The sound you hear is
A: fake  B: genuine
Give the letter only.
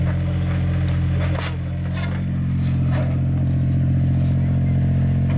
B